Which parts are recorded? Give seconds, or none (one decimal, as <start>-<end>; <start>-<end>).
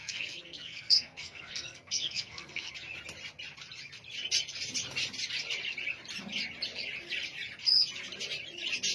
2.7-8.9